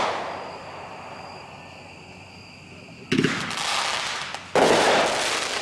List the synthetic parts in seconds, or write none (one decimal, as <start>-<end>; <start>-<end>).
none